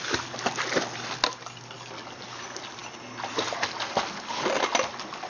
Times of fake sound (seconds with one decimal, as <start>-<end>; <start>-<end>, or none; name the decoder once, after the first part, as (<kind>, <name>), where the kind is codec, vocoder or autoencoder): none